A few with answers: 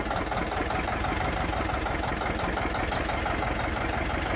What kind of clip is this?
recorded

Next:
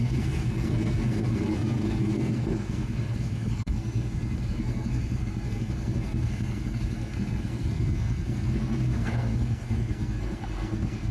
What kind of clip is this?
remade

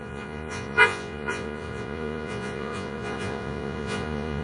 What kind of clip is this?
remade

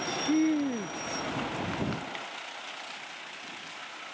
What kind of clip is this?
recorded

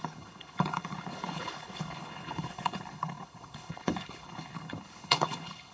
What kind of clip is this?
remade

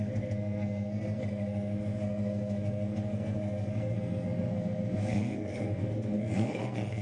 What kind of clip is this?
remade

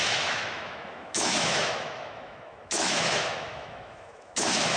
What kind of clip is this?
remade